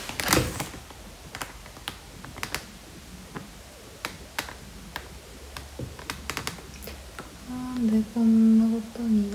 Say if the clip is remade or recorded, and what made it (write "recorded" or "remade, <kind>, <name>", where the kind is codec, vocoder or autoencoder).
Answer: recorded